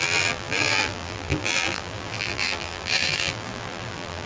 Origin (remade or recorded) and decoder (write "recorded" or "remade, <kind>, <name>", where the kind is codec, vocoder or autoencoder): remade, vocoder, BigVGAN v2